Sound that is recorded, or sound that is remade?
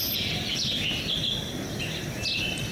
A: recorded